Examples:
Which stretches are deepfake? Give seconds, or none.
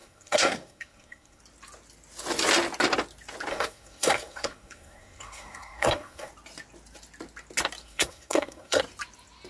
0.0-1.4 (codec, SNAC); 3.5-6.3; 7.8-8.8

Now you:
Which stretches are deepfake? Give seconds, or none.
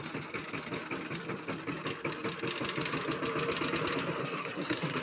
4.2-5.0 (codec, SNAC)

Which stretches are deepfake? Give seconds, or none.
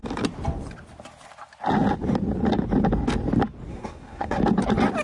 3.7-4.4 (codec, SNAC)